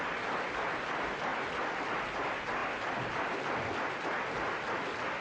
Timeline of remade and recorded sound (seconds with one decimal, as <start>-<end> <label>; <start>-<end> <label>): 0.0-5.2 recorded